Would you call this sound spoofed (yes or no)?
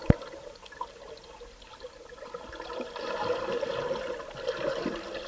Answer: no